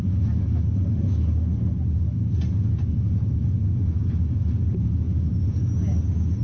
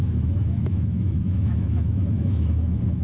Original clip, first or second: first